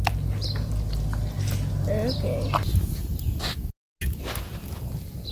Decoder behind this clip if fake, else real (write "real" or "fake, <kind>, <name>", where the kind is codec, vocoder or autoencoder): real